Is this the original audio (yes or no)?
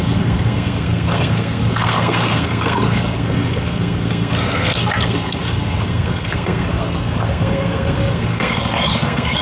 no